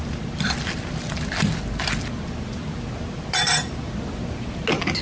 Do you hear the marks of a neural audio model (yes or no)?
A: no